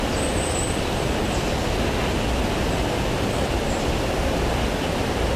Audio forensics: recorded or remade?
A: recorded